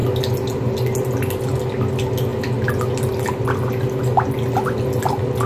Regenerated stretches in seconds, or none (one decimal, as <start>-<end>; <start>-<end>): none